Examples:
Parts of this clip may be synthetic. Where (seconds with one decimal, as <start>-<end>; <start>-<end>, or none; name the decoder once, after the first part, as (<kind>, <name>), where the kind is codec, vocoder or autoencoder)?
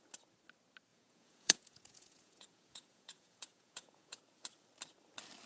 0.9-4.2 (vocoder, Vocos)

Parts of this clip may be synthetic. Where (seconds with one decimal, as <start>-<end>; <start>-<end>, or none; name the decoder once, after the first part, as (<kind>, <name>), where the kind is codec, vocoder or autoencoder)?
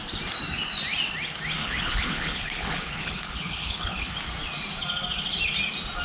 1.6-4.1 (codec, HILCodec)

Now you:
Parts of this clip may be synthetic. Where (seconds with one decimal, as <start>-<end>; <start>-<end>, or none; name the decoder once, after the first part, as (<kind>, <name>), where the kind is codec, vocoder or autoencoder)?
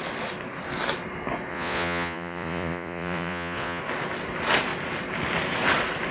1.5-3.8 (vocoder, Vocos)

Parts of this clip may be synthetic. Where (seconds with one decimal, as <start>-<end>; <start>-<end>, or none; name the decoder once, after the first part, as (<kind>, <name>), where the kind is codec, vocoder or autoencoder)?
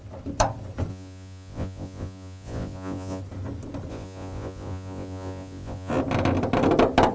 0.9-3.2 (vocoder, Vocos); 3.9-5.9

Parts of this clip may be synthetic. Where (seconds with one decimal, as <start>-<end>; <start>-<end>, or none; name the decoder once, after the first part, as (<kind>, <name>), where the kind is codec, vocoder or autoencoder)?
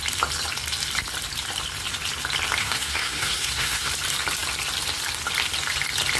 2.6-3.9 (codec, SNAC)